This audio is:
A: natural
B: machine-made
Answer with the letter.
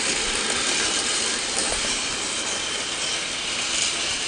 A